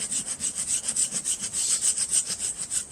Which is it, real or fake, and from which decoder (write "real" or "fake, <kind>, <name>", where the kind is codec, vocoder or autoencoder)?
real